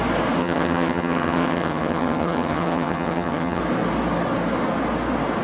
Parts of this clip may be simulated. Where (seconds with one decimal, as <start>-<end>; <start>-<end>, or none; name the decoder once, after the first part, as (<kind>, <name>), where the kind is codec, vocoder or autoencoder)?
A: 0.4-3.6 (vocoder, HiFi-GAN)